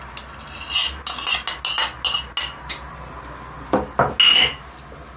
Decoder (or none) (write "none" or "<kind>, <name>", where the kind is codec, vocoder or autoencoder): none